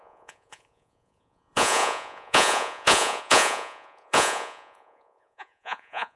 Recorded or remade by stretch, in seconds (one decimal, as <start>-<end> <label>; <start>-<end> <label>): 0.0-6.2 remade